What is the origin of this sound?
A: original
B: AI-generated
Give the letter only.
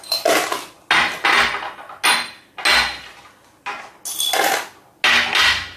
A